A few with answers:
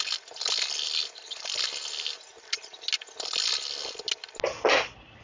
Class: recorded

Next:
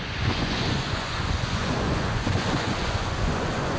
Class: remade